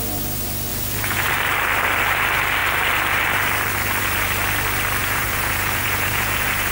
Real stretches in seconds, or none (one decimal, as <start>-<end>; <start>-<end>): 0.0-0.7; 1.3-5.0